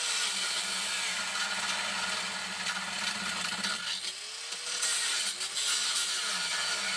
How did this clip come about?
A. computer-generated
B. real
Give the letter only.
B